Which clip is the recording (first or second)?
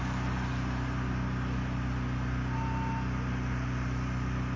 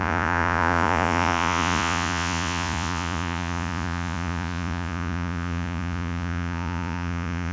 first